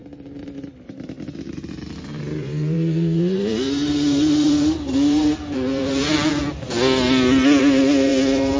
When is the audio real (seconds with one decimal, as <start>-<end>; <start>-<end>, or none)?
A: 6.4-7.6